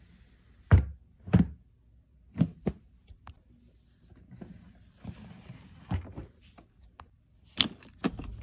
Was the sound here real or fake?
real